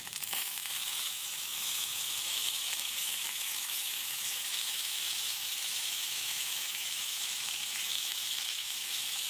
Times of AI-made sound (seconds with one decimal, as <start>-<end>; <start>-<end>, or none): 0.0-9.3